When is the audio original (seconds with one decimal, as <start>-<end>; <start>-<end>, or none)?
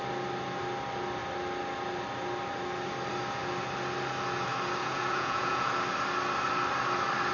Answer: 0.0-4.8; 5.7-7.3